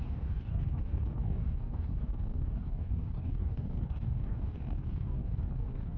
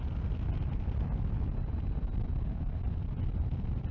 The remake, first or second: first